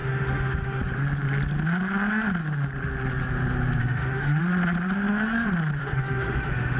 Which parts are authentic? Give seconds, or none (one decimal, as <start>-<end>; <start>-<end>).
0.8-3.8; 4.4-5.8